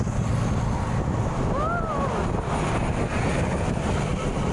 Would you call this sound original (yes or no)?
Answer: yes